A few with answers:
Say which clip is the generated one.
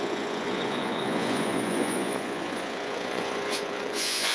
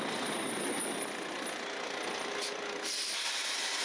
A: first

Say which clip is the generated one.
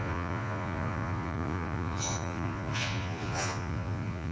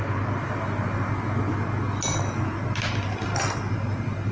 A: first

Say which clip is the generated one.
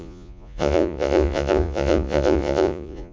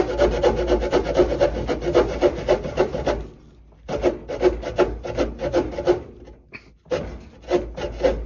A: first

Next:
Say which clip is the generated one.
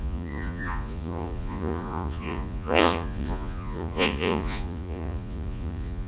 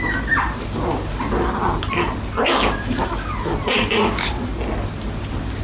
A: first